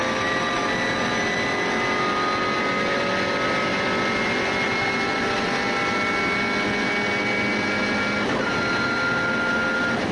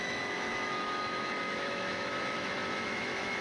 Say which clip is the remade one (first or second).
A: second